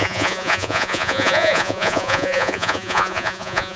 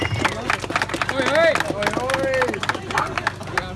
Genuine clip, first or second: second